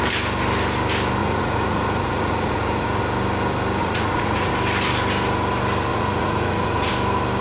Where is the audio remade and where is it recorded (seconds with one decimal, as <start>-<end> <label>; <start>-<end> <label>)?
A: 0.0-1.2 recorded; 1.2-3.0 remade; 3.0-3.8 recorded; 3.8-4.5 remade; 4.5-5.9 recorded; 5.9-6.9 remade; 6.9-7.4 recorded

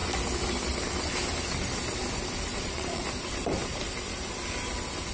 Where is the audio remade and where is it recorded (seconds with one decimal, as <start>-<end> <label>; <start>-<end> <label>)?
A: 0.0-2.5 recorded; 2.5-3.0 remade; 3.0-5.1 recorded

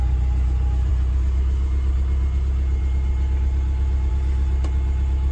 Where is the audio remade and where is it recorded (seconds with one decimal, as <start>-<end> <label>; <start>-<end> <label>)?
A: 0.0-5.3 recorded

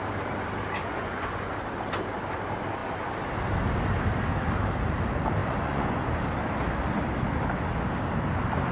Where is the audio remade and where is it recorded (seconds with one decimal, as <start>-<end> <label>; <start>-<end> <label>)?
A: 0.0-0.8 recorded; 0.8-1.5 remade; 1.5-5.4 recorded; 5.4-6.1 remade; 6.1-8.7 recorded

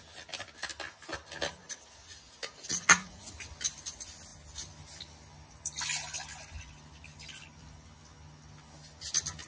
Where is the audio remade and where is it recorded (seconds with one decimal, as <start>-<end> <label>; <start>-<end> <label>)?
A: 0.0-1.6 recorded; 1.6-3.5 remade; 3.5-9.5 recorded

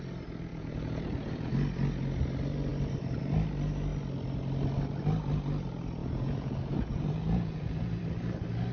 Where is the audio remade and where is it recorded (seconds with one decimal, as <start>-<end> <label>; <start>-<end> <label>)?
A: 0.0-0.5 recorded; 0.5-1.5 remade; 1.5-6.0 recorded; 6.0-8.0 remade; 8.0-8.7 recorded